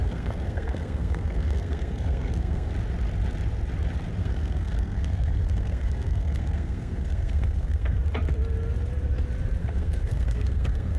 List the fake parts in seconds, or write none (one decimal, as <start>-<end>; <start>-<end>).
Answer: 0.0-2.7; 4.2-8.0; 9.6-11.0